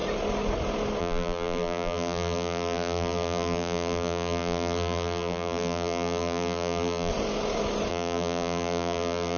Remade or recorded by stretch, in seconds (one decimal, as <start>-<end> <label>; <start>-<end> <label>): 0.0-1.0 recorded; 1.0-7.1 remade; 7.1-7.9 recorded; 7.9-9.4 remade